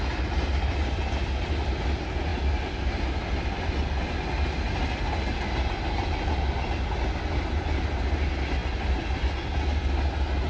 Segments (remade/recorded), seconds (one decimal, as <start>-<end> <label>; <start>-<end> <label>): 0.0-10.5 recorded